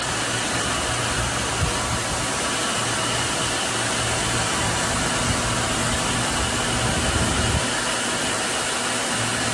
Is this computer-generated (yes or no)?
no